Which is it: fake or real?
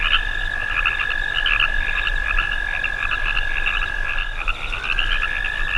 real